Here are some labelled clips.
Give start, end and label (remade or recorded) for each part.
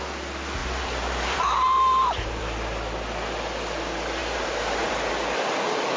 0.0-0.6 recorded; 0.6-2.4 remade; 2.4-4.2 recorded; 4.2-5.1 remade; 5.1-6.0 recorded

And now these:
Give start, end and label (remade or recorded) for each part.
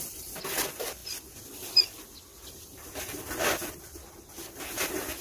0.0-5.2 recorded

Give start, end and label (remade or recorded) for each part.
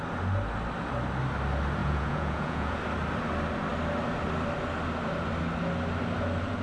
0.0-1.8 recorded; 1.8-2.8 remade; 2.8-6.6 recorded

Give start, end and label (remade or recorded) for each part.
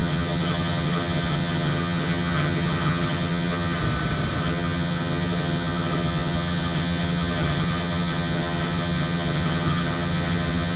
0.0-3.8 remade; 3.8-4.4 recorded; 4.4-10.8 remade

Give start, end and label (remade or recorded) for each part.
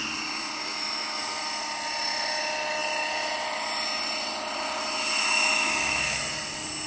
0.0-0.6 recorded; 0.6-1.2 remade; 1.2-5.5 recorded; 5.5-6.2 remade; 6.2-6.9 recorded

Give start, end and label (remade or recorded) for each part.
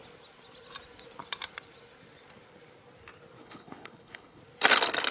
0.0-3.4 recorded; 3.4-4.4 remade; 4.4-5.1 recorded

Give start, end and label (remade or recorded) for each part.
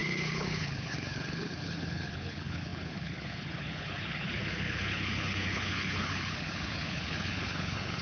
0.0-8.0 remade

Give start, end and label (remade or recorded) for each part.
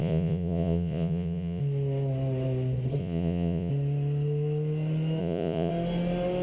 0.0-1.6 remade; 1.6-3.0 recorded; 3.0-3.7 remade; 3.7-5.2 recorded; 5.2-5.7 remade; 5.7-6.4 recorded